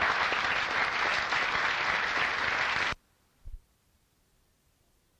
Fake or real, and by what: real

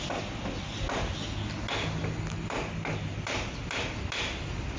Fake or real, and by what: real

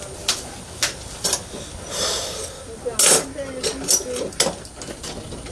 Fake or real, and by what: real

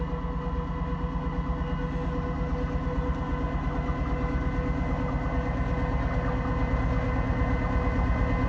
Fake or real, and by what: real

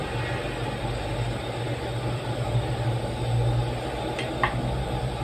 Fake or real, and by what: real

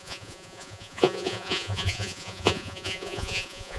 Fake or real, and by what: fake, vocoder, Vocos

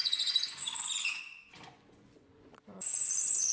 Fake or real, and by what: fake, vocoder, Vocos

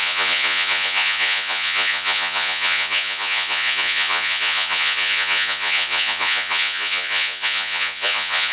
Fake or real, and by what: fake, vocoder, Vocos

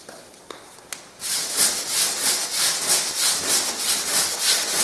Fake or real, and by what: real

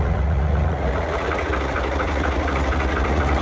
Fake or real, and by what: fake, vocoder, Vocos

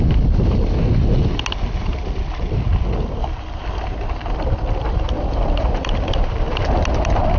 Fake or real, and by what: real